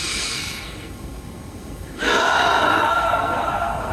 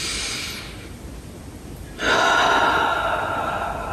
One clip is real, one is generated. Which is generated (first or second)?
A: first